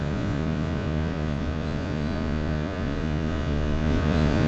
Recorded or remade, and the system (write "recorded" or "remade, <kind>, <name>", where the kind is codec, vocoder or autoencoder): remade, vocoder, Vocos